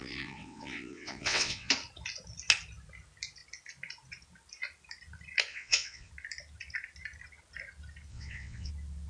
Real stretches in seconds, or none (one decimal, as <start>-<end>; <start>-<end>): 1.7-5.5; 6.1-8.1; 8.7-9.1